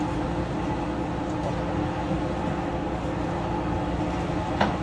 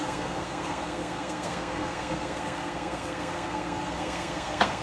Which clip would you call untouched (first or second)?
first